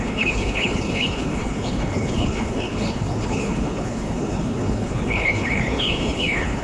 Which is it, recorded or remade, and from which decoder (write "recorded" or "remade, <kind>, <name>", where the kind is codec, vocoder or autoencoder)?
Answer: remade, codec, HILCodec